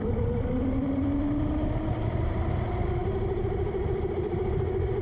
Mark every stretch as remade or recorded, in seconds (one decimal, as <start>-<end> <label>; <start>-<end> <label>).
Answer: 0.0-5.0 recorded

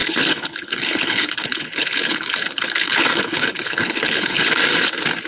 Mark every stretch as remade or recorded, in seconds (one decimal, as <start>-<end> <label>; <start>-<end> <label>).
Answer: 0.0-4.6 remade; 4.6-5.3 recorded

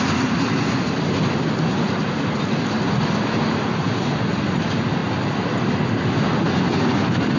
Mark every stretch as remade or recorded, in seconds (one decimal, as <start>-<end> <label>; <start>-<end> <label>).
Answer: 0.0-7.4 recorded

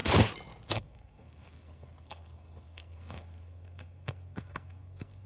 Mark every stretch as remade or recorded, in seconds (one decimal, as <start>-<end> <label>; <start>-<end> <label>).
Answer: 0.0-0.7 recorded; 0.7-5.3 remade